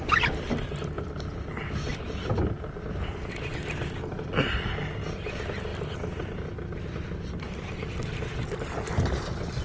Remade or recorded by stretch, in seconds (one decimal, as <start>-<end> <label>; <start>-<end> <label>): 0.0-9.6 recorded